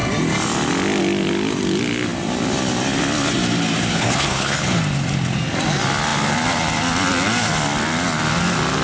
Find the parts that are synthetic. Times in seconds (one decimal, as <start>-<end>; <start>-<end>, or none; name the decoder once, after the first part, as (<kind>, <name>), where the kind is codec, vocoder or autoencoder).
3.9-4.8 (codec, HILCodec)